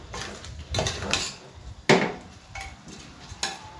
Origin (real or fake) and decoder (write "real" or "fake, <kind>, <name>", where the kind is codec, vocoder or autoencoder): real